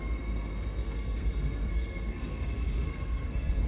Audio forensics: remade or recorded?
remade